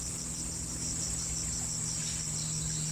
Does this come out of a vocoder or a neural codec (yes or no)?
no